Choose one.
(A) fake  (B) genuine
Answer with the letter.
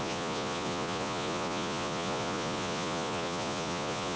A